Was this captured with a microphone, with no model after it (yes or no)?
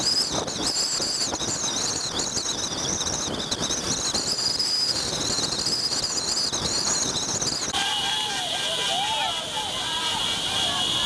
yes